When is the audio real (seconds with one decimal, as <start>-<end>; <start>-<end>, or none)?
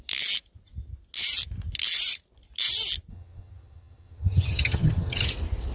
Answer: 0.0-3.1; 5.3-5.7